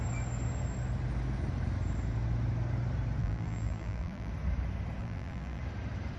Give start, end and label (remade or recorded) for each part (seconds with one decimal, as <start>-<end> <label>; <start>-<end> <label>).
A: 0.0-3.2 recorded; 3.2-4.3 remade; 4.3-5.0 recorded; 5.0-5.6 remade; 5.6-6.2 recorded